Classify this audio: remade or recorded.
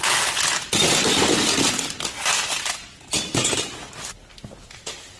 recorded